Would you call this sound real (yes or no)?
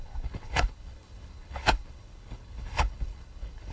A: no